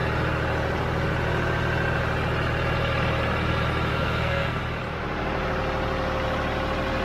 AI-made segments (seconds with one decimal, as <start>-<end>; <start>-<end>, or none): 3.9-4.6